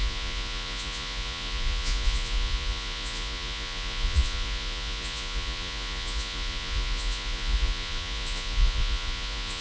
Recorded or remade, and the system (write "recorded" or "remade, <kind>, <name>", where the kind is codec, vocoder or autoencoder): remade, vocoder, Vocos